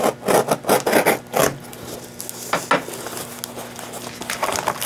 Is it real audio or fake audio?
real